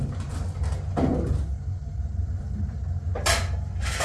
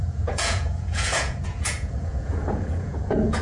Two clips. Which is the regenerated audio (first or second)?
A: second